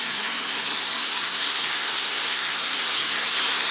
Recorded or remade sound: remade